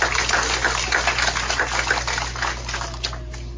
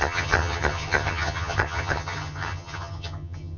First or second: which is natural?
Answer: first